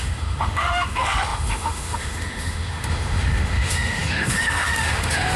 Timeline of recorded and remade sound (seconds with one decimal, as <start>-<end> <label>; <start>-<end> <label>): 0.0-5.4 remade